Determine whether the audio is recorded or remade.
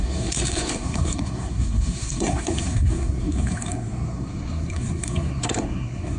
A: remade